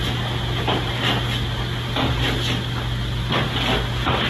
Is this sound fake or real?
real